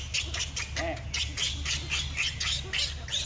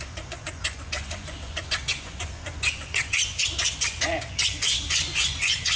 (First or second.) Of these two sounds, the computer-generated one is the second